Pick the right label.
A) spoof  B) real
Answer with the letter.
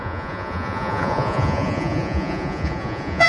A